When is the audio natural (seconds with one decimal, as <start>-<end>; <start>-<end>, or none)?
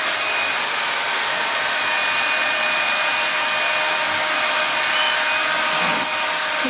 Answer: 0.0-6.7